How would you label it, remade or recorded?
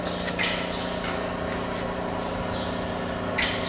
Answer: recorded